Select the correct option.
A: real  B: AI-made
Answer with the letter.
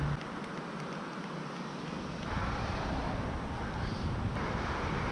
A